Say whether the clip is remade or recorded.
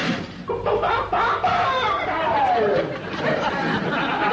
recorded